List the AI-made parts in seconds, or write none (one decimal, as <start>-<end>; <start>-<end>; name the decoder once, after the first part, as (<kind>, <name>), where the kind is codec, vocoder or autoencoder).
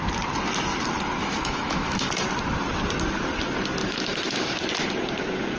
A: 1.2-2.1 (autoencoder, DAC-VAE); 3.8-4.6